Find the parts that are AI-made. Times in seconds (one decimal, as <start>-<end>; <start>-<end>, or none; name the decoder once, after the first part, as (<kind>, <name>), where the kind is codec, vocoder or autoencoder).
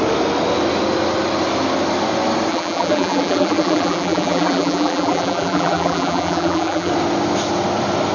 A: 2.5-6.9 (vocoder, BigVGAN v2)